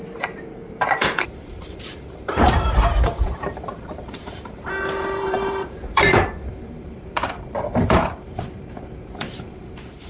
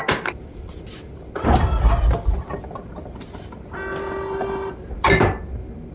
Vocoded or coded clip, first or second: first